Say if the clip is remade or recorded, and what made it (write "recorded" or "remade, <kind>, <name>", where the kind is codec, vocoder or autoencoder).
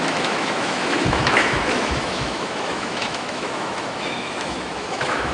remade, autoencoder, DAC-VAE